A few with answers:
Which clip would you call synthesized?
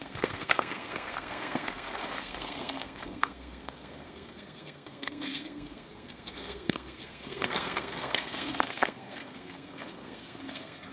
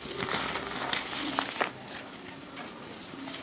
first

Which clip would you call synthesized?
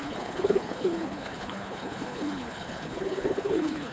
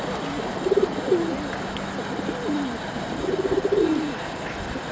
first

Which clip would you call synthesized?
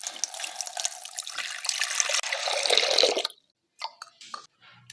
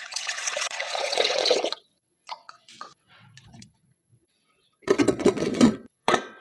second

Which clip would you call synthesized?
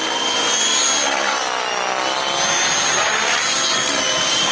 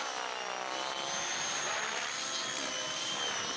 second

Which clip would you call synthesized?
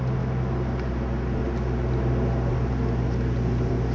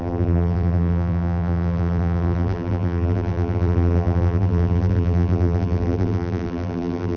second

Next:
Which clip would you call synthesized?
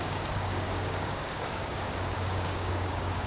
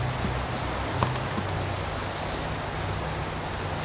first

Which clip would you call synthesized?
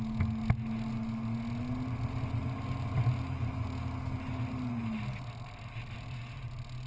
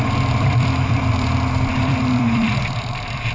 second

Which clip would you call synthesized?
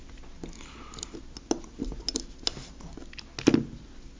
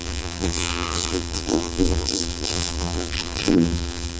second